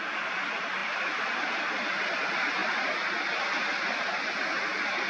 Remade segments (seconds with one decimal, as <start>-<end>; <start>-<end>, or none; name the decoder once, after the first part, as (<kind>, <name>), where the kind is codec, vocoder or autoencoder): none